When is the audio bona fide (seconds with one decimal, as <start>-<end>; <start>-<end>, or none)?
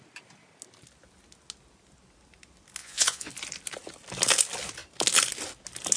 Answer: 0.0-2.8; 3.3-6.0